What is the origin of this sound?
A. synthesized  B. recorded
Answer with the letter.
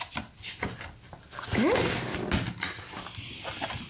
B